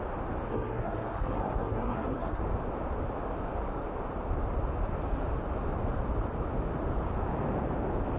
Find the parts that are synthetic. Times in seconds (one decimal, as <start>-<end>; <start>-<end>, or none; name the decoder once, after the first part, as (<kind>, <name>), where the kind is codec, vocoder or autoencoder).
0.5-2.4 (codec, SNAC)